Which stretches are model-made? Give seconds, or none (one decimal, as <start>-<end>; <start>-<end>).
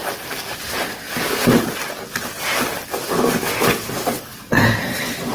none